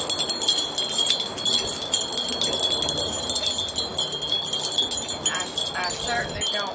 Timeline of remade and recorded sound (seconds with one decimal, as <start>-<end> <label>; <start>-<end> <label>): 0.0-6.7 recorded